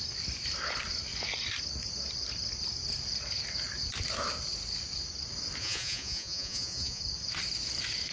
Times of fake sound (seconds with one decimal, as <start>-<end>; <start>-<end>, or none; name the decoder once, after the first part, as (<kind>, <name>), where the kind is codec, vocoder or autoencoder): 5.6-7.0 (vocoder, Vocos)